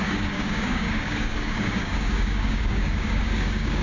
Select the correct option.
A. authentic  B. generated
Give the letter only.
B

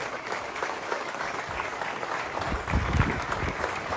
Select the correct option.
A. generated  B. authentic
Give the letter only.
A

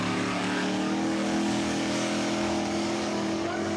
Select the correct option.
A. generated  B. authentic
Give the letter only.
A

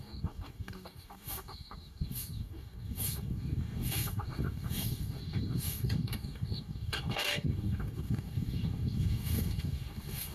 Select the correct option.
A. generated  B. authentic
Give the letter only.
A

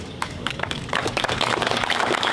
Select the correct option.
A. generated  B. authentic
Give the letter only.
A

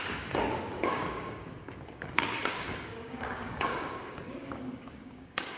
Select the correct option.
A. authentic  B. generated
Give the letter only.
B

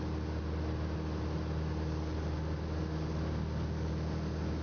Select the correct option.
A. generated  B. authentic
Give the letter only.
B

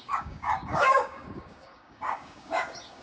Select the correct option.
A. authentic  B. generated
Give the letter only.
B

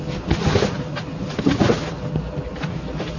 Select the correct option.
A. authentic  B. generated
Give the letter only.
A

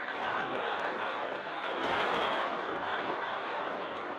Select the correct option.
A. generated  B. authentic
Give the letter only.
A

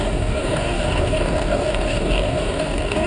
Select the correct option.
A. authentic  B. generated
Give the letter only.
B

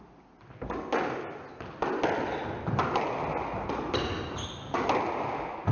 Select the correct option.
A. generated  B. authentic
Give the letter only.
B